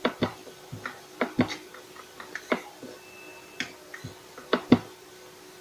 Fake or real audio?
fake